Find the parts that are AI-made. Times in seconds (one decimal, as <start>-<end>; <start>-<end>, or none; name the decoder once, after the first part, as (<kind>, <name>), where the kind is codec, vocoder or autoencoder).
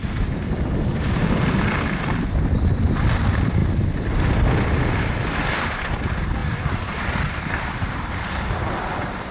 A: 6.4-8.1 (vocoder, BigVGAN v2)